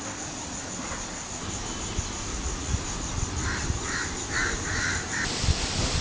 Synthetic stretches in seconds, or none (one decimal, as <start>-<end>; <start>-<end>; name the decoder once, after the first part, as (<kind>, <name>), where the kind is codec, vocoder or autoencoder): 2.3-2.8 (vocoder, Vocos)